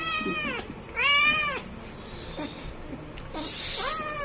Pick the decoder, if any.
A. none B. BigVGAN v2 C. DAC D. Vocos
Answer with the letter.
A